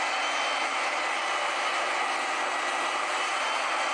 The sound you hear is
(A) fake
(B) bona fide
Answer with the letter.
B